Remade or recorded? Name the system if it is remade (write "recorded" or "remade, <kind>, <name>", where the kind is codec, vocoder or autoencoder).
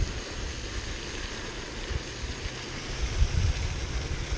recorded